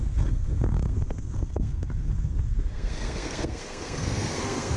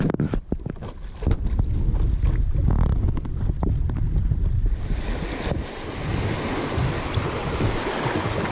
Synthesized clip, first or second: first